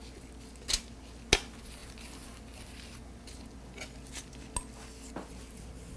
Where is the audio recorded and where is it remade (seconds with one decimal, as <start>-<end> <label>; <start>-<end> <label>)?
0.0-6.0 recorded